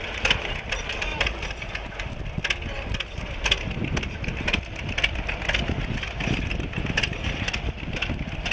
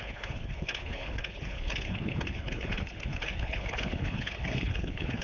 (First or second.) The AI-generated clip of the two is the second